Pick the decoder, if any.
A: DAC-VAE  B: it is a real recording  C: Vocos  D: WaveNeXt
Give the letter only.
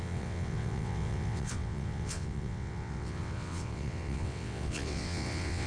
D